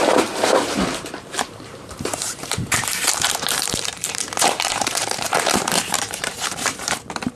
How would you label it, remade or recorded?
remade